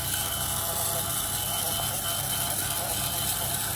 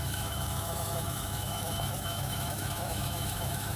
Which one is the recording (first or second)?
first